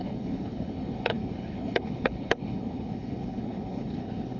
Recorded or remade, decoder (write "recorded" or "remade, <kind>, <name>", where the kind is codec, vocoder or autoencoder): remade, codec, HILCodec